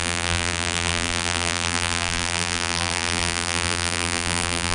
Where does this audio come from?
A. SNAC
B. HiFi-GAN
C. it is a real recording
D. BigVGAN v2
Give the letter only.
D